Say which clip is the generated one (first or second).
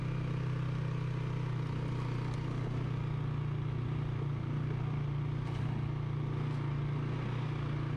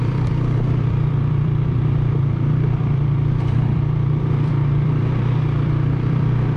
second